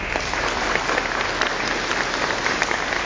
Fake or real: real